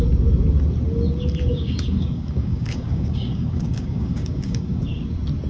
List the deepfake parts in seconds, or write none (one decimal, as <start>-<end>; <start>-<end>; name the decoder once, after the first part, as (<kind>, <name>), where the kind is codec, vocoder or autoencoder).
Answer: 1.5-4.8 (codec, DAC)